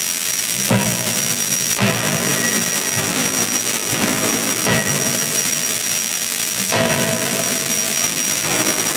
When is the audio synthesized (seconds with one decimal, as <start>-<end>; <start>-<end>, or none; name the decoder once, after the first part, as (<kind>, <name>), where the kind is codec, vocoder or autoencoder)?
0.0-9.0 (vocoder, BigVGAN v2)